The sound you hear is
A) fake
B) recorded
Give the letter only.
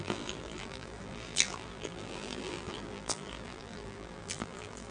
A